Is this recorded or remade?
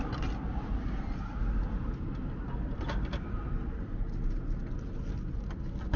recorded